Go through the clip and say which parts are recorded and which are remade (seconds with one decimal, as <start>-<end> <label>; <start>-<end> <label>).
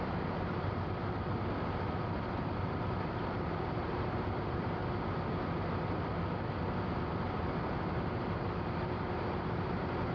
0.0-1.0 remade; 1.0-1.7 recorded; 1.7-4.8 remade; 4.8-7.2 recorded; 7.2-10.1 remade